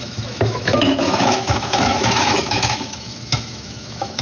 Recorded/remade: remade